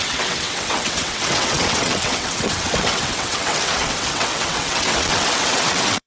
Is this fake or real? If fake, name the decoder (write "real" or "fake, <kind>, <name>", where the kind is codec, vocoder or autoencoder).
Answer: fake, vocoder, WaveNeXt